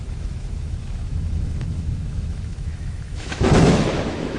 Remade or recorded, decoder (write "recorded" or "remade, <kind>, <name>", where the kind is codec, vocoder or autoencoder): remade, autoencoder, DAC-VAE